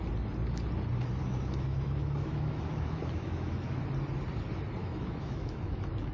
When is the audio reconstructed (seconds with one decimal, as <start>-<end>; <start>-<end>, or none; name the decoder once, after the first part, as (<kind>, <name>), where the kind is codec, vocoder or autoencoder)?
1.2-3.8 (autoencoder, DAC-VAE); 4.8-6.1